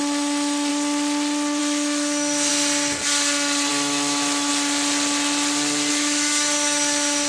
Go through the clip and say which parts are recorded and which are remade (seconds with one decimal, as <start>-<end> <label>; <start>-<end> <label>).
0.0-0.7 remade; 0.7-1.6 recorded; 1.6-2.5 remade; 2.5-3.7 recorded; 3.7-4.5 remade; 4.5-5.9 recorded; 5.9-7.3 remade